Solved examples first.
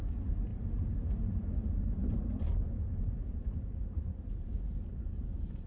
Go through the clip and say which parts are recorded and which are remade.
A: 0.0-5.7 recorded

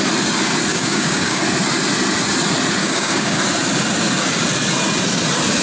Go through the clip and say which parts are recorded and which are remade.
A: 0.0-0.7 recorded; 0.7-1.4 remade; 1.4-2.8 recorded; 2.8-3.4 remade; 3.4-5.6 recorded

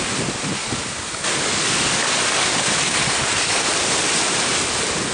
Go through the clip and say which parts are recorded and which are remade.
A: 0.0-0.6 recorded; 0.6-3.7 remade; 3.7-5.1 recorded